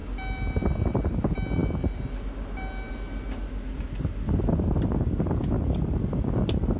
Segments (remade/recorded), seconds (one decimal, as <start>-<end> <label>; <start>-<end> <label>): 0.0-6.8 recorded